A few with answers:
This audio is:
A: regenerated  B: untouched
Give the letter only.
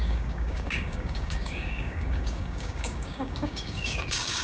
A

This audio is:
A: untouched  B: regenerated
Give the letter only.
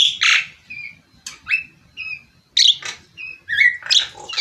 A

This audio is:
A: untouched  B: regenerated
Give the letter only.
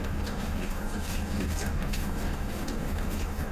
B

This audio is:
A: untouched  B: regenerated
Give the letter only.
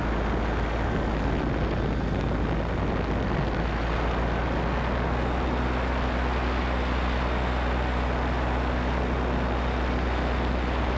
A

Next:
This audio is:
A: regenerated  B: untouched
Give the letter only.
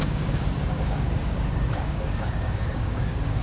A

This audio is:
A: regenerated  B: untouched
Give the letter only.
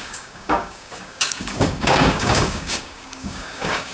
A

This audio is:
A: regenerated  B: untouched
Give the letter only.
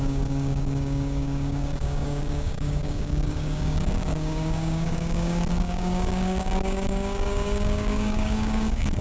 A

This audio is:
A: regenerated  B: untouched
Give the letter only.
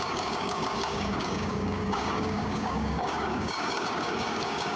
A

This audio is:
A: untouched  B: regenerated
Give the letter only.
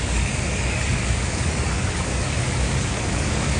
B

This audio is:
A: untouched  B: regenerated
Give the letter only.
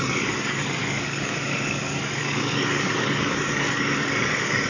B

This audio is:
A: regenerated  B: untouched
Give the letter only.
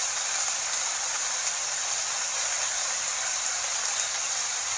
B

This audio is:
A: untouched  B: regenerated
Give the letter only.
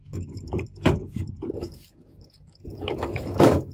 B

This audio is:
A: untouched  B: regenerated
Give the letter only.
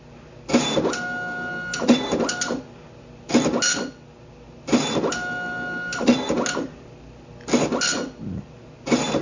A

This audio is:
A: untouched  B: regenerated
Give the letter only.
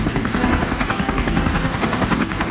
B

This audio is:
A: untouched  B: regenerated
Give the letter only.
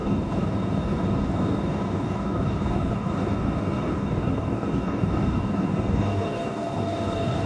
B